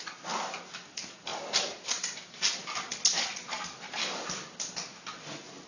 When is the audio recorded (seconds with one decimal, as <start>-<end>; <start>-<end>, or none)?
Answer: 0.0-5.7